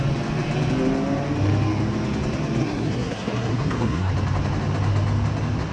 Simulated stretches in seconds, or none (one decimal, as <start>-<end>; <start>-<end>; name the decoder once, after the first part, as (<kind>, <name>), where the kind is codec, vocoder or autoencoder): 2.6-4.1 (codec, SNAC)